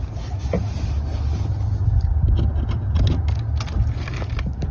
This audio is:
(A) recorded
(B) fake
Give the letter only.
A